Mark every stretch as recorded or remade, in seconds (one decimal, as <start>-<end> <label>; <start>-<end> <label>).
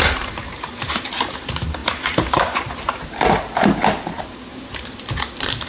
0.0-5.7 remade